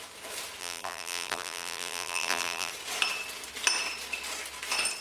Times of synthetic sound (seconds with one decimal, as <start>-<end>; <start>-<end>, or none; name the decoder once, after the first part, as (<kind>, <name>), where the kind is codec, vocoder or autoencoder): 0.6-2.7 (vocoder, BigVGAN v2)